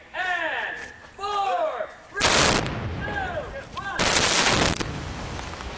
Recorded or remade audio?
recorded